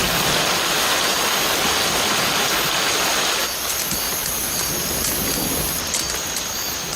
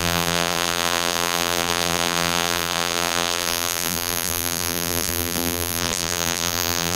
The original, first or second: first